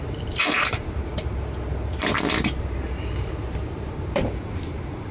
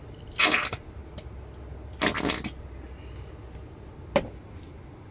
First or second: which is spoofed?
first